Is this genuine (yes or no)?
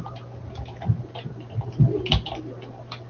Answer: yes